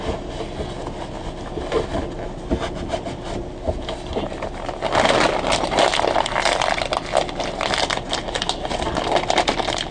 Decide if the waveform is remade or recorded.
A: recorded